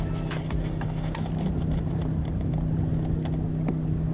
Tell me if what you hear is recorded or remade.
recorded